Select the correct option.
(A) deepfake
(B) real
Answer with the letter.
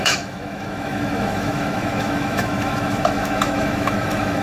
A